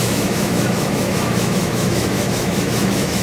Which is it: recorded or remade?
remade